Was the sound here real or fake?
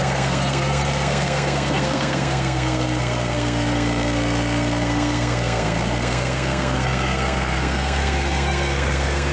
fake